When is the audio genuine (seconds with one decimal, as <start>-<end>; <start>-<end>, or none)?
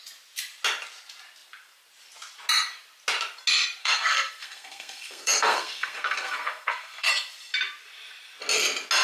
0.0-3.8; 7.1-9.0